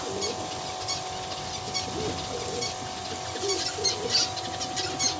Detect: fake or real real